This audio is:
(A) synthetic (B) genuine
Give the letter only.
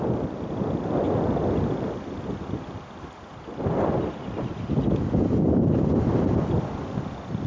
B